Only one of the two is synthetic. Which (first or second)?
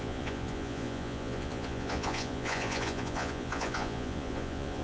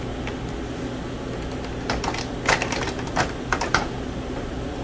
first